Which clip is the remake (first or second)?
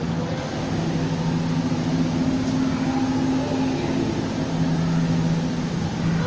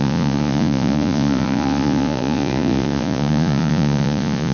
second